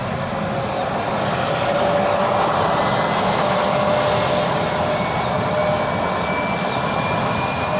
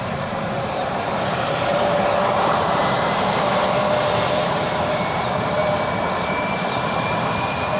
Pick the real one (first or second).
first